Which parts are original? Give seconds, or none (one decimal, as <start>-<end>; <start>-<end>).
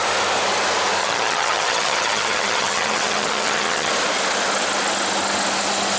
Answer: 0.0-1.0; 3.9-6.0